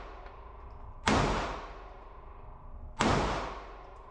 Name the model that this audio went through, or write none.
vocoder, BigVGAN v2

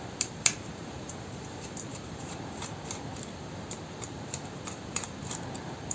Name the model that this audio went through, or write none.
vocoder, BigVGAN v2